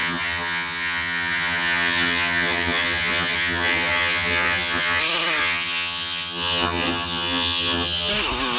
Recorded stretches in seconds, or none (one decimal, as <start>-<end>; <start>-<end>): 5.0-5.4; 8.1-8.6